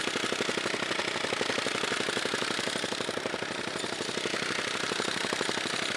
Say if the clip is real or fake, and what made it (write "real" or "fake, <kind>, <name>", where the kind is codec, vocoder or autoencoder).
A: real